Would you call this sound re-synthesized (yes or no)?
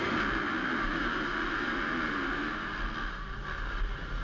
no